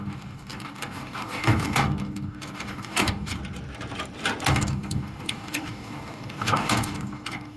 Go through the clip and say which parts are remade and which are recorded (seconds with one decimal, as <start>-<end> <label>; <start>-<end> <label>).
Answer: 0.0-3.4 remade; 3.4-4.5 recorded; 4.5-7.6 remade